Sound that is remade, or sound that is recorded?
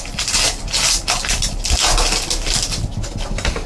recorded